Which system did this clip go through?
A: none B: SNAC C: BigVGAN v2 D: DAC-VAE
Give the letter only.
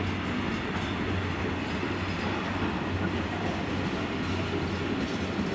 A